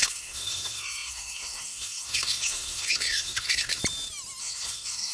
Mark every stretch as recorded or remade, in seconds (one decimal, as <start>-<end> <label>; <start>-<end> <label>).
0.0-3.8 remade; 3.8-4.4 recorded; 4.4-5.1 remade